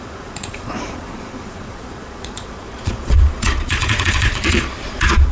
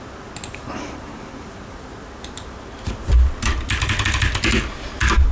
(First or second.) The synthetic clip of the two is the first